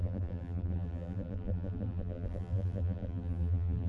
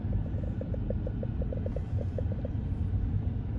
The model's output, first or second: first